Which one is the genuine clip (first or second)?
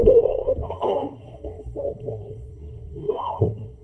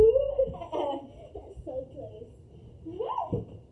second